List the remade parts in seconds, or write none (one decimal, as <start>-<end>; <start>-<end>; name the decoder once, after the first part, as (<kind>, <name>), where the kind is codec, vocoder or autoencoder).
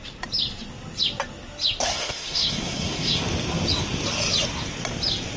1.9-3.2 (codec, SNAC)